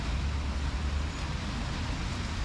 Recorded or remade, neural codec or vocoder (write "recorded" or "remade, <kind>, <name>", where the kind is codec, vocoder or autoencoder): recorded